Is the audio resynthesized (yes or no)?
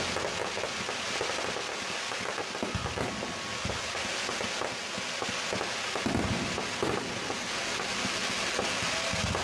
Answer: no